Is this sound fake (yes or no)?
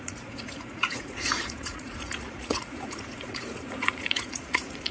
yes